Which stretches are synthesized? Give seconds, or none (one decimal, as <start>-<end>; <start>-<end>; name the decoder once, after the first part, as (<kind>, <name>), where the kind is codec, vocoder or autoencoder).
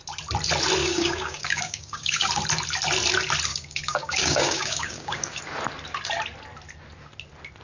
0.8-2.3 (codec, DAC); 3.5-5.4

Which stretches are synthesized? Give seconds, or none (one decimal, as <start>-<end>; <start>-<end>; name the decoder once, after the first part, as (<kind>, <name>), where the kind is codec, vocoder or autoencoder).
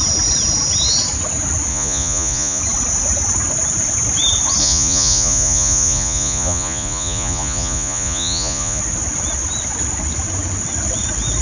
1.7-2.6 (vocoder, Vocos); 4.6-8.8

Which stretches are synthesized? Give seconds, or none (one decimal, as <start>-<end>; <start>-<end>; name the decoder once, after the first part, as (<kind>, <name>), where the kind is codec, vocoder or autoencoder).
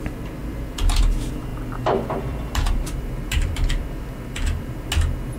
0.4-1.0 (vocoder, BigVGAN v2); 1.5-4.7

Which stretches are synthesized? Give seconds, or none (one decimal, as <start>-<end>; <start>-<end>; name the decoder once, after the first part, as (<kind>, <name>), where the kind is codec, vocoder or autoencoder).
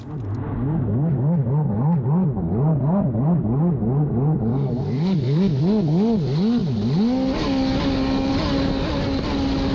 4.5-5.6 (codec, DAC)